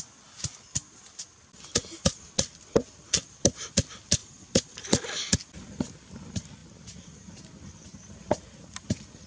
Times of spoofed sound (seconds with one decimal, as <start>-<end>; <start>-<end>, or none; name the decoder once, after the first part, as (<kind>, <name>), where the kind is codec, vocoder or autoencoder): 1.8-2.3 (vocoder, BigVGAN v2); 4.2-4.8